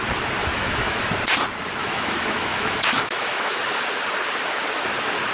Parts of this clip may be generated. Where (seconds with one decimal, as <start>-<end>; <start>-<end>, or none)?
0.4-1.1; 1.8-3.8